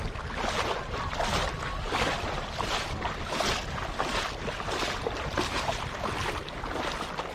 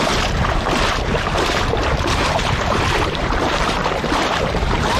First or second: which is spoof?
second